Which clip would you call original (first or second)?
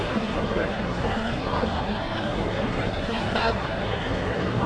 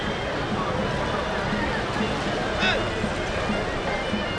second